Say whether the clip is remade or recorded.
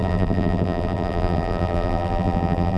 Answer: remade